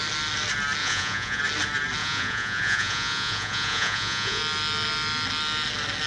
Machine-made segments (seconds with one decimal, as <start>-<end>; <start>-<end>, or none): 0.8-1.4; 2.0-4.4